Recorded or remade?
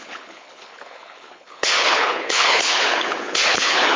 remade